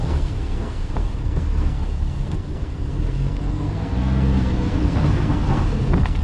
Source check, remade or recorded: remade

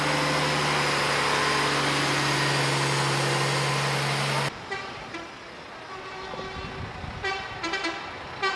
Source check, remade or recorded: recorded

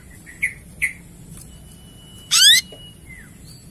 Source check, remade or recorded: recorded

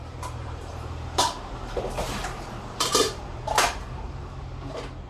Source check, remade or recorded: remade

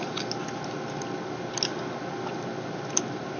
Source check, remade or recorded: recorded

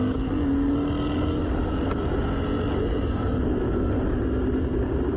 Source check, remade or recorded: recorded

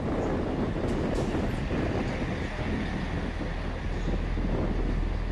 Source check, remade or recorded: recorded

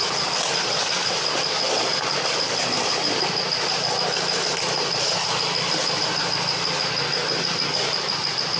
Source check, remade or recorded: recorded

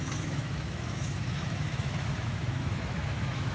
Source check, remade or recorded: remade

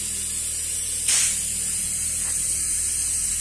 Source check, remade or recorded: recorded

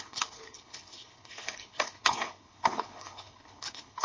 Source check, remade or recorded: remade